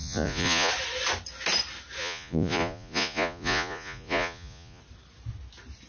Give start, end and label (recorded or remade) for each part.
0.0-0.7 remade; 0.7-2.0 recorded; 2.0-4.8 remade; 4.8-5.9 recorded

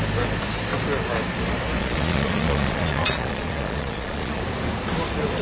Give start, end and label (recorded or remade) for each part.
0.0-1.8 recorded; 1.8-4.4 remade; 4.4-5.4 recorded